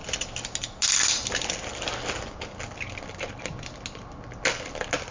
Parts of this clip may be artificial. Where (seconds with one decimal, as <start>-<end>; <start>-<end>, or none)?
none